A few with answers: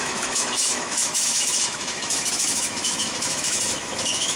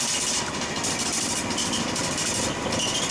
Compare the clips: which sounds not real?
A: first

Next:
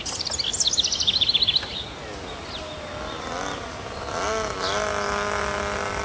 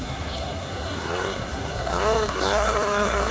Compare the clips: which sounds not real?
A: second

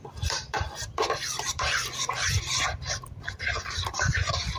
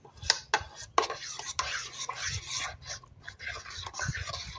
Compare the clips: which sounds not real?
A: first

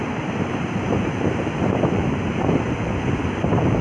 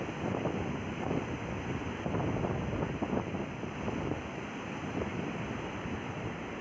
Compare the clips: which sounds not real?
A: first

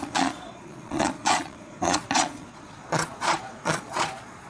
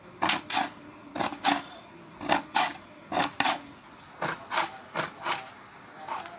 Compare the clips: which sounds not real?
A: first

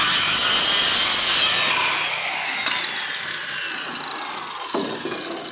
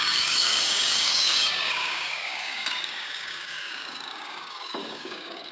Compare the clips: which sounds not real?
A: second